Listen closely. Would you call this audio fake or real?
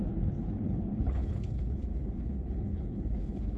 fake